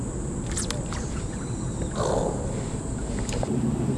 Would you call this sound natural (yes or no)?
yes